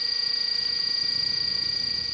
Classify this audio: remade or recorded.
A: recorded